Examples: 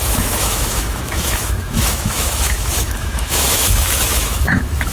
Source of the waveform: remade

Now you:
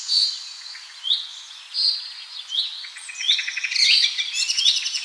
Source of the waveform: remade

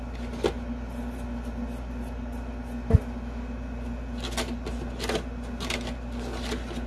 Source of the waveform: recorded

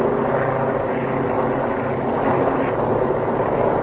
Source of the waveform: recorded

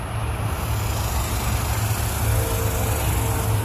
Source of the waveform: recorded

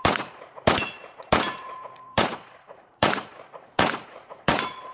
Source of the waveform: remade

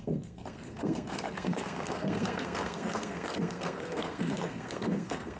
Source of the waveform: remade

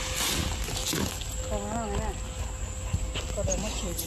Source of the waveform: recorded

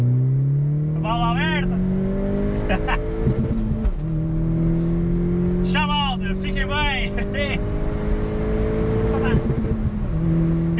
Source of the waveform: recorded